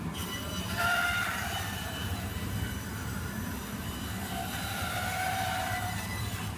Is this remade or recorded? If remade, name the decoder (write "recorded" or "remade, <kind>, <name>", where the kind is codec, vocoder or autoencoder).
remade, vocoder, BigVGAN v2